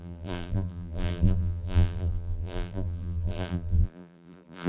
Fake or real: fake